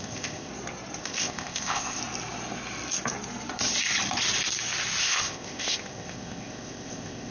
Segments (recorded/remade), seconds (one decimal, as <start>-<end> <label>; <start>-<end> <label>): 0.0-0.5 remade; 0.5-1.0 recorded; 1.0-2.0 remade; 2.0-5.0 recorded; 5.0-7.3 remade